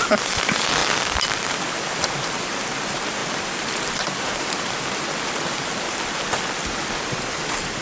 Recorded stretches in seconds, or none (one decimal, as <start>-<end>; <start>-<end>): none